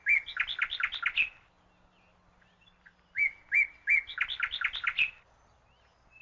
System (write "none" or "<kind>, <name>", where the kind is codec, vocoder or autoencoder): none